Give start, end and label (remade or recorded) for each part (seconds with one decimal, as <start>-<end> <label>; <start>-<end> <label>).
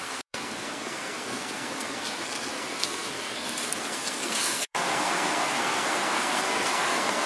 0.0-7.3 remade